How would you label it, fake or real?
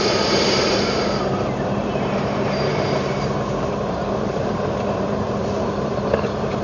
fake